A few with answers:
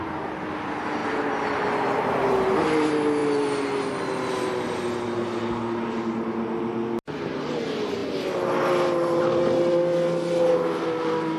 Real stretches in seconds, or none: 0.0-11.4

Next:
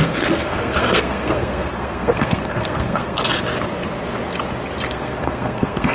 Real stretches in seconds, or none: 3.2-4.9

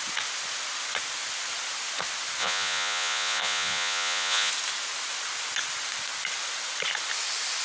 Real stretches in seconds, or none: 0.0-2.4; 4.5-7.6

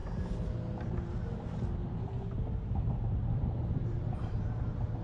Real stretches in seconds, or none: 0.0-1.8; 4.6-5.0

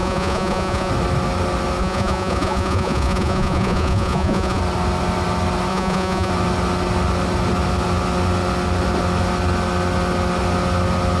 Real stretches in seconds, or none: 0.9-1.8; 4.6-5.7; 6.3-11.2

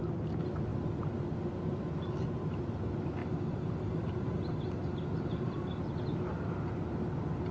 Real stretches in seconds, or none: 0.0-3.2; 5.8-7.5

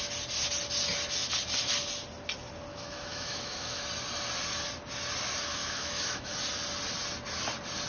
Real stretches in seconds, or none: 0.0-2.7; 3.8-5.5; 6.3-7.9